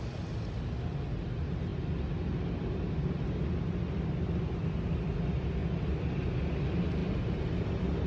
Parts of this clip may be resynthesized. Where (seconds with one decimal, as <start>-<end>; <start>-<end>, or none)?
none